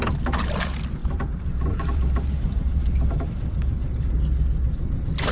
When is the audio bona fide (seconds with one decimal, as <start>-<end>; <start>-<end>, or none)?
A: 0.0-1.0; 4.2-5.3